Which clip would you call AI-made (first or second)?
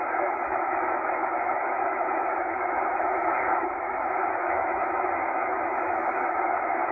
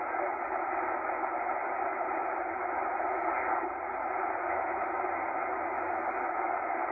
first